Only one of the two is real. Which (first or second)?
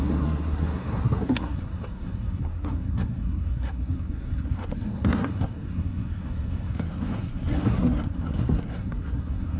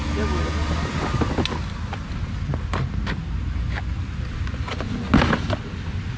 second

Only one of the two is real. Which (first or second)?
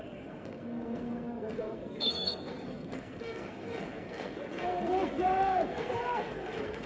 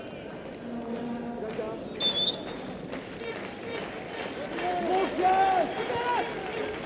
second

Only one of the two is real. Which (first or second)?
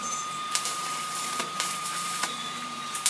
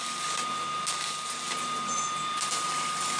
second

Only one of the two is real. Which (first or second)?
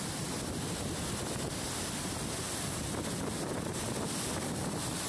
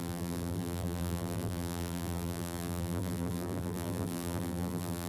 first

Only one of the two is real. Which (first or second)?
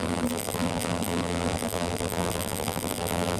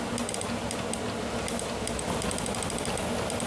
second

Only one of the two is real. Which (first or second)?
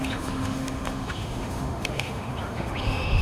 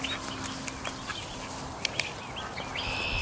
second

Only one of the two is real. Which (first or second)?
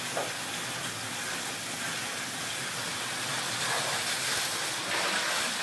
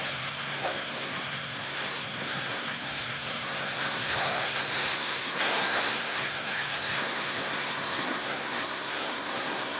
first